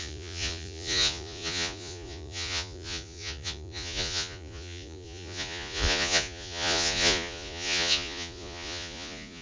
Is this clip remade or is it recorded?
remade